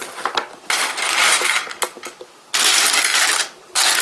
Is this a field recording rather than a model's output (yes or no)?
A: yes